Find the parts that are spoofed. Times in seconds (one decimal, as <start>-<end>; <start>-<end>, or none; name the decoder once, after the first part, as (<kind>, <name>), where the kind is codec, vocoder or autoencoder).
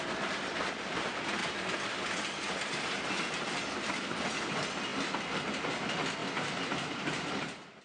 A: 6.2-7.8 (vocoder, BigVGAN v2)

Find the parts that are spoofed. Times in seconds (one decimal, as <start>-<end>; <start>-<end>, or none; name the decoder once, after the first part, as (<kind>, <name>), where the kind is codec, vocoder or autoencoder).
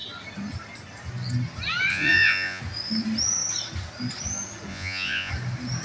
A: 1.9-2.6 (vocoder, Vocos); 4.7-5.3